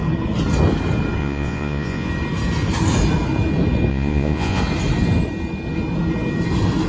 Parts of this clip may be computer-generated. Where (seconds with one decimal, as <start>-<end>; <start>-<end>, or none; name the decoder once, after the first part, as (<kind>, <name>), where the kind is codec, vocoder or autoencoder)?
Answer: 1.2-2.1 (vocoder, Vocos); 3.9-4.6